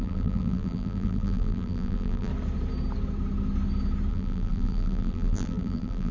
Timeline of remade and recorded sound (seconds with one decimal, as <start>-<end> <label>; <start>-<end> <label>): 0.0-2.3 remade; 2.3-4.1 recorded; 4.1-6.1 remade